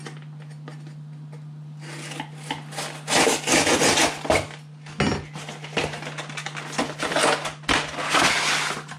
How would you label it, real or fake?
real